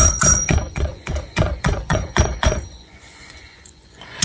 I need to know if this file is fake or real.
fake